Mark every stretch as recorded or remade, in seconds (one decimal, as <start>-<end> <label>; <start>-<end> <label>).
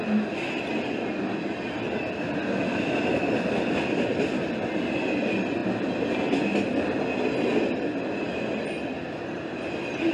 0.0-10.1 recorded